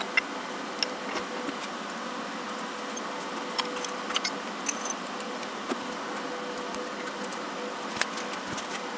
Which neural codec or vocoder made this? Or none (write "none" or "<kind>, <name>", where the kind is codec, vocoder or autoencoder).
none